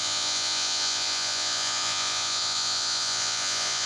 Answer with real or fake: fake